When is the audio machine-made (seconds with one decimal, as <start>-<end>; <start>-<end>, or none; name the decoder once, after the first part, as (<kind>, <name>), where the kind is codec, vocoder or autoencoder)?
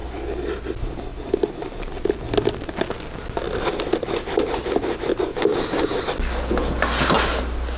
5.3-6.0 (codec, DAC)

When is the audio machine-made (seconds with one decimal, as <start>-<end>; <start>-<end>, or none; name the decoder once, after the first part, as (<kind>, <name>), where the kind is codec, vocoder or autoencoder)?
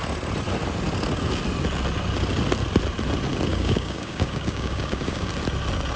3.5-5.3 (codec, DAC)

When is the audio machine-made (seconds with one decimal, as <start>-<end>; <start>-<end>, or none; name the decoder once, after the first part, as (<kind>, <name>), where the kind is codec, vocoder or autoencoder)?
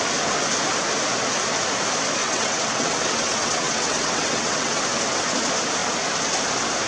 2.2-4.8 (vocoder, WaveNeXt)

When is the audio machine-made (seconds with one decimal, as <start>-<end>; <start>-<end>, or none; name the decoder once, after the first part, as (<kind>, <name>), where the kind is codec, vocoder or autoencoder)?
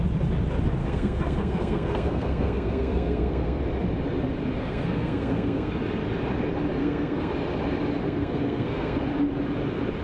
0.8-3.6 (codec, SNAC); 4.6-5.7; 6.8-7.3; 8.0-9.0